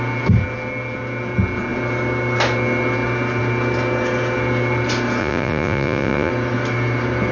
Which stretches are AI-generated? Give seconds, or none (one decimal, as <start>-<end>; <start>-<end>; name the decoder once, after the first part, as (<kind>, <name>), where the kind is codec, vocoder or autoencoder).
5.2-6.3 (vocoder, Vocos)